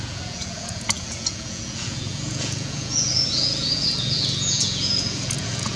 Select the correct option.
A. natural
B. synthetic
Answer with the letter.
B